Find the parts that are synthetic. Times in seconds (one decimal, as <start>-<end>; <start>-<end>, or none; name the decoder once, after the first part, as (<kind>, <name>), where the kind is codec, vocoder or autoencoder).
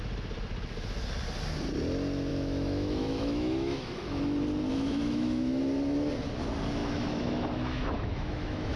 2.3-4.2 (autoencoder, DAC-VAE); 4.7-5.6; 6.8-8.8